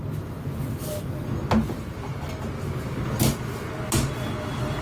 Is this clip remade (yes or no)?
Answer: no